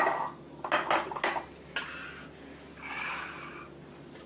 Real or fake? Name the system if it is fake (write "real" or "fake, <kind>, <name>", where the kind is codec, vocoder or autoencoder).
real